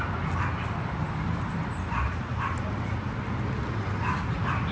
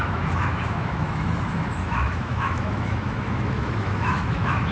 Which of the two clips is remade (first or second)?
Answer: second